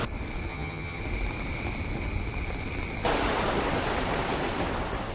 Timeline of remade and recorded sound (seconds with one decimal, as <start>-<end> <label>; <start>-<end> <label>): 0.0-0.5 recorded; 0.5-1.0 remade; 1.0-5.1 recorded